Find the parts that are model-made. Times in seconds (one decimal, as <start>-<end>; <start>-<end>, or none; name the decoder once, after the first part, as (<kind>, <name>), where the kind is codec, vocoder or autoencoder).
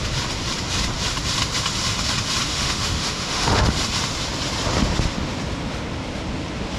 2.5-3.7 (autoencoder, DAC-VAE)